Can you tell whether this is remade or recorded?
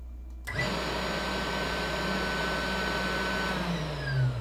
recorded